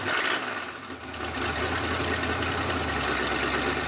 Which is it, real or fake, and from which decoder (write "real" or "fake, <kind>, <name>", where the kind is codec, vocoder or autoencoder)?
real